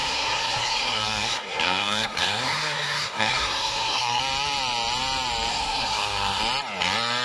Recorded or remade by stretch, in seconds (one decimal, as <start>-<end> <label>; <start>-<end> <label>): 0.0-4.2 remade; 4.2-5.5 recorded; 5.5-6.4 remade; 6.4-7.2 recorded